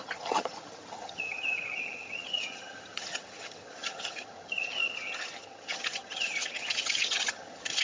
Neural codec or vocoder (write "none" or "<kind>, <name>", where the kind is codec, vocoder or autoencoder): vocoder, HiFi-GAN